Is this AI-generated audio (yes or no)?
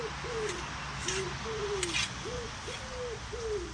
no